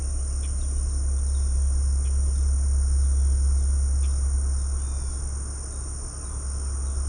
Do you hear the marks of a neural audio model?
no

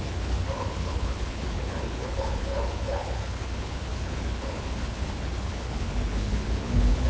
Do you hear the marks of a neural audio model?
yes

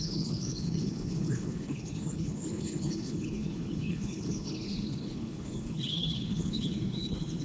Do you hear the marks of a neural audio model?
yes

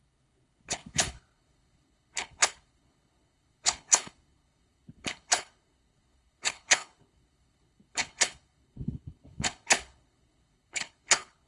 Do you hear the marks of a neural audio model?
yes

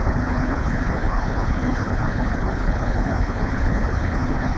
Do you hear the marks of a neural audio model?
yes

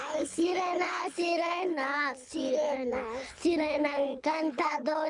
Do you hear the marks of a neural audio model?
yes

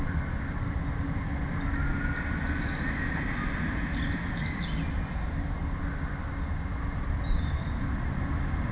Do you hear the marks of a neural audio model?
no